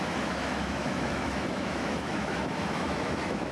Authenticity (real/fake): fake